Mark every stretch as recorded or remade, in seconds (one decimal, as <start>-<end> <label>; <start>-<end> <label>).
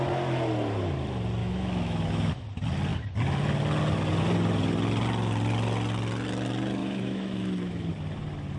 0.0-1.4 recorded; 1.4-2.3 remade; 2.3-6.8 recorded; 6.8-7.9 remade; 7.9-8.6 recorded